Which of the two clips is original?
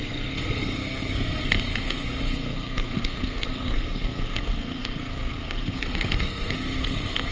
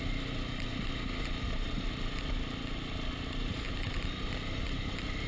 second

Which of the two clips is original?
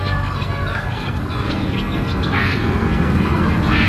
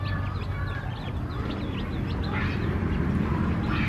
second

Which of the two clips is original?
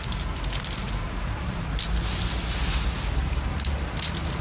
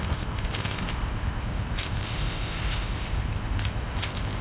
first